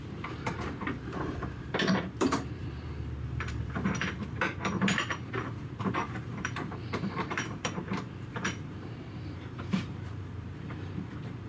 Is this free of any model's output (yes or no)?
no